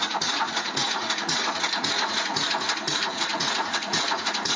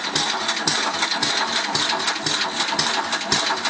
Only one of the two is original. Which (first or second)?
second